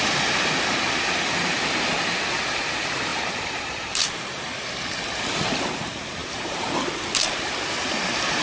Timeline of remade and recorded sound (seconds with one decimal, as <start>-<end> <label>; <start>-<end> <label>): 0.0-3.1 recorded; 3.1-4.4 remade; 4.4-6.2 recorded; 6.2-6.8 remade; 6.8-8.4 recorded